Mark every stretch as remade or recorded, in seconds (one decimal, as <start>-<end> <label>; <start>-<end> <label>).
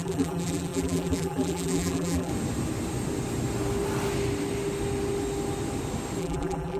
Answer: 0.0-2.3 remade; 2.3-6.2 recorded; 6.2-6.8 remade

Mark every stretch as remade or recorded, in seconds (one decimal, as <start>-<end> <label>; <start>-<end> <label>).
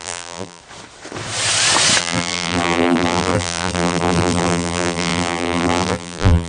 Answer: 0.0-0.6 remade; 0.6-2.0 recorded; 2.0-6.5 remade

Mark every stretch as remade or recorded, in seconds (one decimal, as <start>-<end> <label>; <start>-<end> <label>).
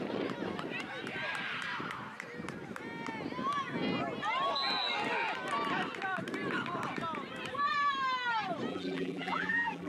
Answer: 0.0-8.7 recorded; 8.7-9.9 remade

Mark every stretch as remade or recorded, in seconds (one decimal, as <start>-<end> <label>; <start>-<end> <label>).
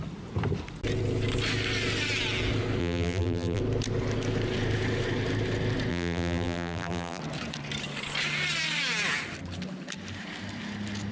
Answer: 0.0-2.8 recorded; 2.8-3.6 remade; 3.6-5.9 recorded; 5.9-7.2 remade; 7.2-11.1 recorded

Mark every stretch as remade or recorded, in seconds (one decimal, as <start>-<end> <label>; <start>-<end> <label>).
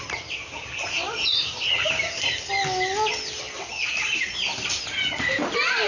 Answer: 0.0-5.9 recorded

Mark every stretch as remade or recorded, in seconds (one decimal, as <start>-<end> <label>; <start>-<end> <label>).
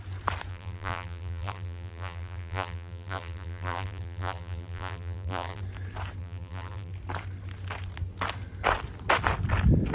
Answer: 0.0-0.5 recorded; 0.5-5.6 remade; 5.6-6.2 recorded; 6.2-6.9 remade; 6.9-9.9 recorded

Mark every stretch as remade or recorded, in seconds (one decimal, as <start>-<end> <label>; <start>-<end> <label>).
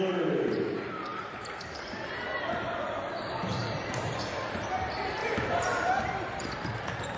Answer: 0.0-7.2 remade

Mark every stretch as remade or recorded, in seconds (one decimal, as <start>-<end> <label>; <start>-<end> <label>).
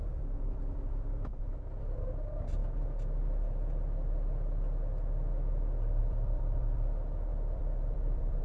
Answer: 0.0-2.6 remade; 2.6-6.0 recorded; 6.0-8.4 remade